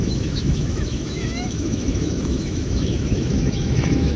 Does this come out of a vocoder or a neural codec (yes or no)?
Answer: yes